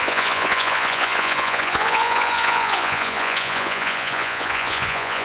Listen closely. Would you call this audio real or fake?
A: fake